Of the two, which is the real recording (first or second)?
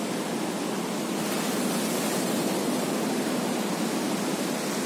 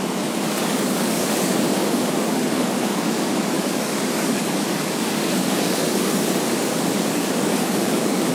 first